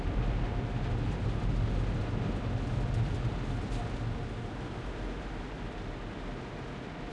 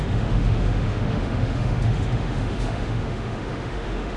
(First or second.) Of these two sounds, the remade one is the second